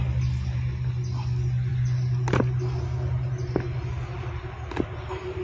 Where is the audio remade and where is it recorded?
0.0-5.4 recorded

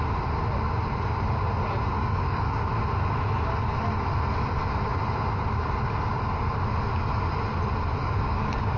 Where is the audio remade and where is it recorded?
0.0-1.9 recorded; 1.9-2.7 remade; 2.7-8.0 recorded; 8.0-8.8 remade

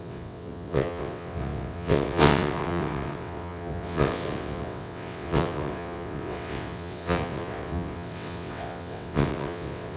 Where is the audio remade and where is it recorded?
0.0-10.0 remade

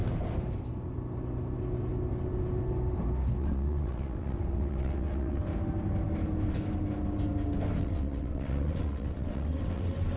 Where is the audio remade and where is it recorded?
0.0-3.4 recorded; 3.4-5.4 remade; 5.4-7.8 recorded; 7.8-10.2 remade

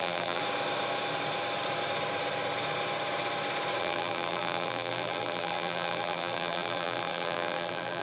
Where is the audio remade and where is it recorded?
0.0-0.4 remade; 0.4-3.8 recorded; 3.8-8.0 remade

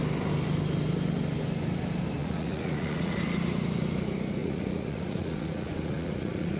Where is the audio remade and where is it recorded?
0.0-2.2 recorded; 2.2-3.2 remade; 3.2-4.4 recorded; 4.4-6.6 remade

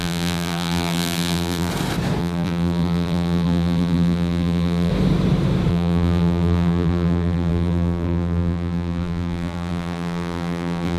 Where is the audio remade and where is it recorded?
0.0-1.7 remade; 1.7-2.2 recorded; 2.2-4.9 remade; 4.9-5.7 recorded; 5.7-11.0 remade

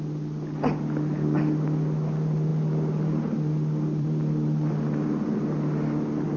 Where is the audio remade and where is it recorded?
0.0-6.4 recorded